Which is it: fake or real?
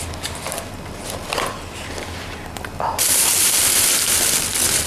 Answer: real